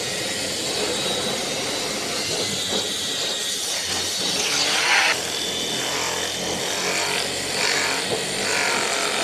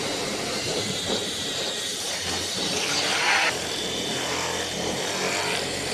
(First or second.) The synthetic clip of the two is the second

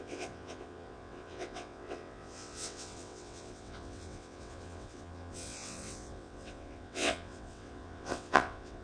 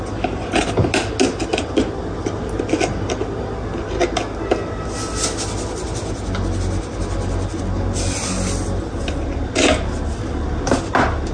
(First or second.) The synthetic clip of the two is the first